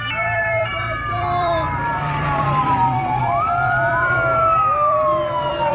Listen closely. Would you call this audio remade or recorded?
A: remade